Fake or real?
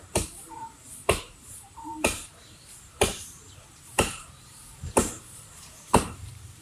fake